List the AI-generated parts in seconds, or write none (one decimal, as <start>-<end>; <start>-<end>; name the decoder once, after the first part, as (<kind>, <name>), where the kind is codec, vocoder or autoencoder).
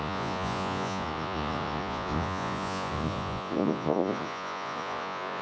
0.0-5.4 (vocoder, Vocos)